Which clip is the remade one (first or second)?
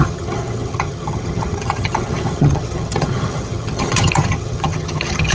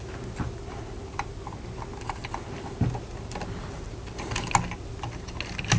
first